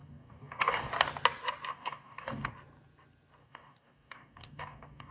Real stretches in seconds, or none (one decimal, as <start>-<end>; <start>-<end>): 0.9-1.7; 2.5-3.4